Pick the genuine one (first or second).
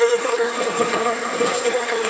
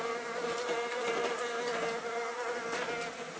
second